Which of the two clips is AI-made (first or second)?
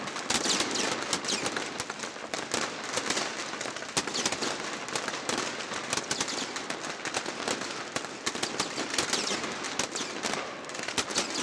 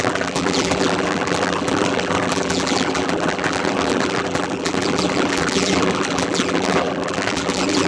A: second